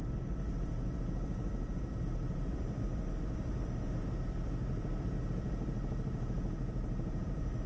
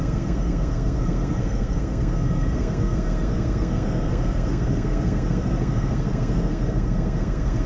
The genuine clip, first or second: first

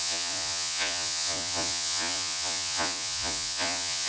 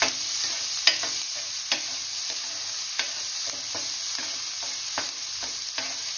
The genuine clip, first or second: second